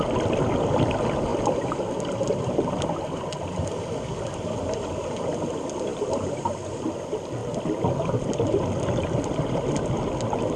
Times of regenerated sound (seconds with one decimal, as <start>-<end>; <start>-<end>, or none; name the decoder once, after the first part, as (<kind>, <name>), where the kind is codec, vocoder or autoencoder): 1.3-2.5 (vocoder, BigVGAN v2); 5.9-6.9